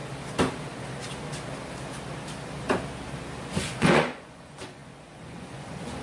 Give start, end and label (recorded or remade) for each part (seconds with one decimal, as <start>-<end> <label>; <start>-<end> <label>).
0.0-3.6 recorded; 3.6-6.0 remade